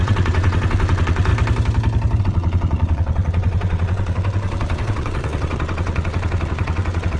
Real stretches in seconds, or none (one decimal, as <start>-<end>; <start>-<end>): 1.3-2.2